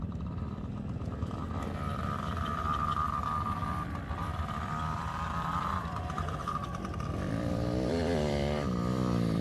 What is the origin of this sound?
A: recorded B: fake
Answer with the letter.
B